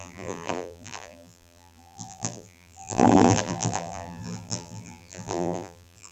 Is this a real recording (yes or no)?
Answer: no